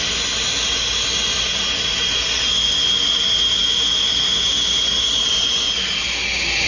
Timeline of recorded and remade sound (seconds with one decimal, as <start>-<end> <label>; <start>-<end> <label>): 0.0-6.7 recorded